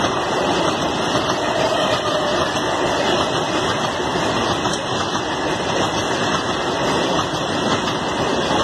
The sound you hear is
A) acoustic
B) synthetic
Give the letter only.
A